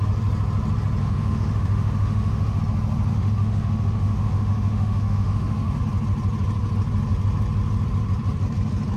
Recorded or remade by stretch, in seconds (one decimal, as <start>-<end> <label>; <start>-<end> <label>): 0.0-1.0 recorded; 1.0-2.6 remade; 2.6-3.1 recorded; 3.1-5.8 remade; 5.8-9.0 recorded